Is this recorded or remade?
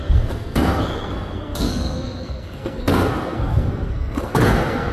remade